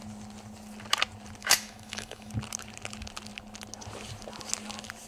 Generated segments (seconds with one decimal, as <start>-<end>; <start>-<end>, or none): 1.4-2.3